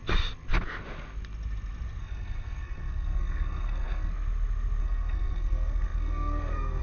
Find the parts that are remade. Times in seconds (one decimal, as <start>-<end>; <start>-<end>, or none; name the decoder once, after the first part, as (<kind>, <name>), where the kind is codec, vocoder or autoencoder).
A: 2.0-4.1 (codec, SNAC); 4.8-6.8

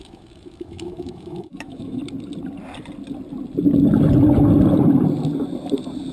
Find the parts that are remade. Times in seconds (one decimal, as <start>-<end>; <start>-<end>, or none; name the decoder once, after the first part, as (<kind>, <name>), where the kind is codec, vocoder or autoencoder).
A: 0.0-2.0 (autoencoder, DAC-VAE)

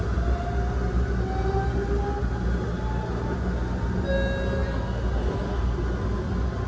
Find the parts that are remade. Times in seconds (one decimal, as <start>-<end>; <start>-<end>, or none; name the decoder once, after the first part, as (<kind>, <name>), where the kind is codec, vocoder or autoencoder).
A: none

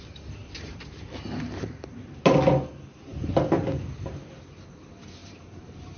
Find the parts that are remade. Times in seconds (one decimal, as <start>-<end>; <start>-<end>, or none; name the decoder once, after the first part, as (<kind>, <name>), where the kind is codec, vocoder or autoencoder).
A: 0.4-2.2 (vocoder, BigVGAN v2); 5.2-6.0

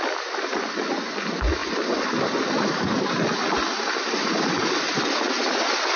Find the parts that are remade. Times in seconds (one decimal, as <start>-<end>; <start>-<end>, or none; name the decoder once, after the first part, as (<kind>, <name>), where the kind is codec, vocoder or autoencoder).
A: none

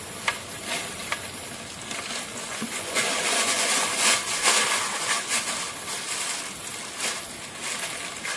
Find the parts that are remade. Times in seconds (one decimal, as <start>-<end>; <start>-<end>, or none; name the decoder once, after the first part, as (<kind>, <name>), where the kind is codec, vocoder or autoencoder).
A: 2.3-5.5 (vocoder, Vocos)

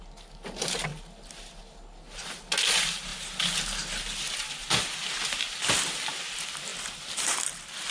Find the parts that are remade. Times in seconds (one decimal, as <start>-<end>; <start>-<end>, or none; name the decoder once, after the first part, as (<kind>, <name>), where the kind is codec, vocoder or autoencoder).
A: 6.7-7.4 (vocoder, BigVGAN v2)

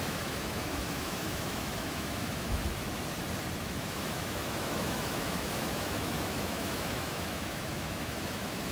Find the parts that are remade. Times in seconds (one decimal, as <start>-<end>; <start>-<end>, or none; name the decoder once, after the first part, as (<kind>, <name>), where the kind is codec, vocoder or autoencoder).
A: 0.0-2.6 (autoencoder, DAC-VAE); 3.6-8.7